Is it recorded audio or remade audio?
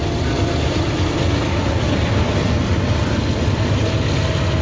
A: recorded